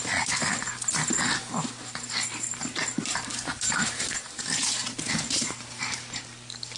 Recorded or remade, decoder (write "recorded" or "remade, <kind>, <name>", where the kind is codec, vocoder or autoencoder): recorded